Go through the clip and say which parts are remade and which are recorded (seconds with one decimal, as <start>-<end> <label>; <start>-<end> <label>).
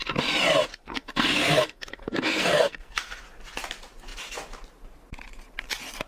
0.0-0.7 recorded; 0.7-3.2 remade; 3.2-6.1 recorded